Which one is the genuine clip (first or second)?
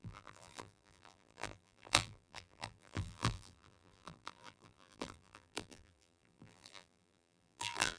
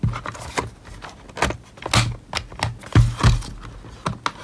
second